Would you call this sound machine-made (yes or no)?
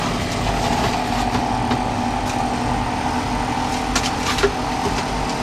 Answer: no